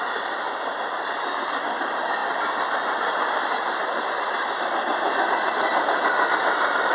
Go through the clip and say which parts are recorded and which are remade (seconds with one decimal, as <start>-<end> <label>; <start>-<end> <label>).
0.0-6.9 recorded